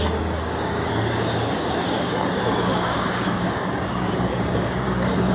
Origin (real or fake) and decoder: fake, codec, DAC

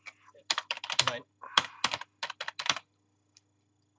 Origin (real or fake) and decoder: real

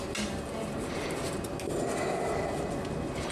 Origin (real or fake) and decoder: real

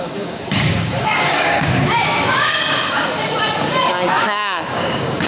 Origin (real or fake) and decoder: fake, codec, DAC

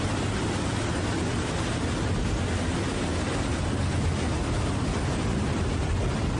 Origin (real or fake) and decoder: real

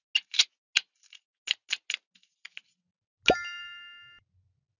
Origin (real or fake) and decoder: real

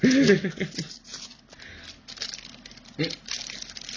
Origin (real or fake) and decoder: real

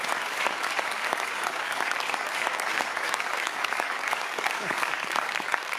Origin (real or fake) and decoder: fake, codec, DAC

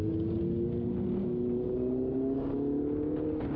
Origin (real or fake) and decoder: real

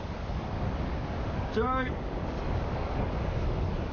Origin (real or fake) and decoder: fake, codec, DAC